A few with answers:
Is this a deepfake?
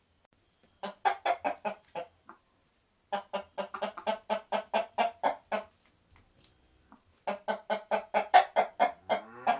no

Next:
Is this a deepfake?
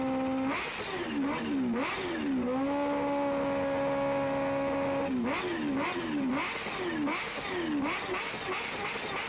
no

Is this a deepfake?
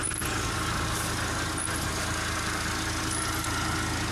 no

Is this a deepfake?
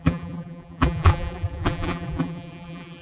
yes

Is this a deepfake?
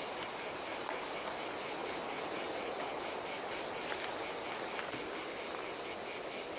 no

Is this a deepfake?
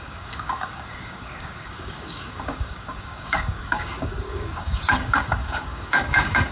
yes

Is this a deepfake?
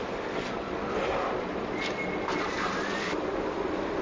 no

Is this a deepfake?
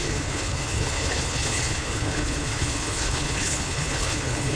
yes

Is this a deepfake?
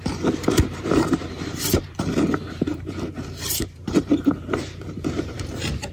yes